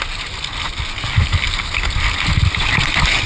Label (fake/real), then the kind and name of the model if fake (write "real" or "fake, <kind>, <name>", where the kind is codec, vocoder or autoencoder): real